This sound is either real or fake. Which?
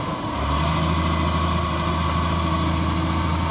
real